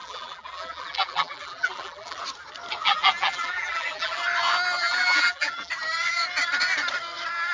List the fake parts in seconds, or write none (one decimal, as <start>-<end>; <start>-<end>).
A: 0.0-2.2; 2.8-4.2; 4.8-5.7